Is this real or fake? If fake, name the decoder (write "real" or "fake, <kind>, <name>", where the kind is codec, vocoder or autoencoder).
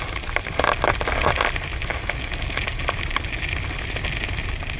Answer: real